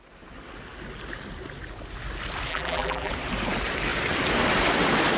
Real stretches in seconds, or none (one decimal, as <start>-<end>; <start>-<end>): 0.0-2.5; 3.1-5.2